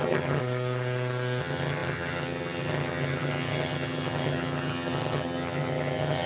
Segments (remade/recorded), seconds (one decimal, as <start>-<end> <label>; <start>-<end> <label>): 0.0-0.4 remade; 0.4-1.4 recorded; 1.4-6.3 remade

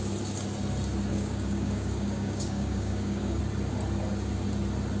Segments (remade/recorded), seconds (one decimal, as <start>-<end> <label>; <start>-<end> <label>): 0.0-1.1 recorded; 1.1-3.4 remade; 3.4-5.0 recorded

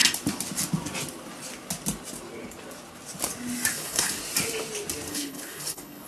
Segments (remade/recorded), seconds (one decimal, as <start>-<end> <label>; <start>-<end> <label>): 0.0-3.7 recorded; 3.7-4.2 remade; 4.2-5.1 recorded; 5.1-6.1 remade

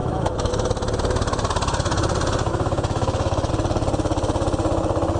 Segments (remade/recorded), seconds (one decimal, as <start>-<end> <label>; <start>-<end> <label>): 0.0-0.5 remade; 0.5-2.5 recorded; 2.5-3.5 remade; 3.5-5.2 recorded

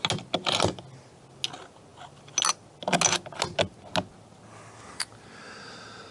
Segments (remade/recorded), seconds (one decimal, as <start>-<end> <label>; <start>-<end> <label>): 0.0-6.1 recorded

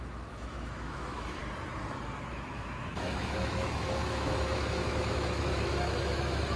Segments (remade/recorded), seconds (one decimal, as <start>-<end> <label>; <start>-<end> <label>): 0.0-1.4 remade; 1.4-2.3 recorded; 2.3-6.6 remade